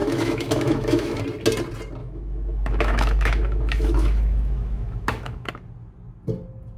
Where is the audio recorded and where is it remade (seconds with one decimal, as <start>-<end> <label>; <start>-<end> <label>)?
0.0-1.2 remade; 1.2-2.0 recorded; 2.0-5.5 remade; 5.5-6.8 recorded